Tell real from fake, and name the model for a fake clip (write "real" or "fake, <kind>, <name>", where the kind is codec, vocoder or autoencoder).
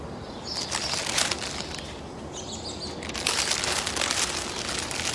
real